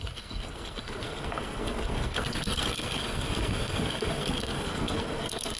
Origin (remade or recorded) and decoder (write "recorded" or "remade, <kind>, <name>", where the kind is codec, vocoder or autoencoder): remade, codec, SNAC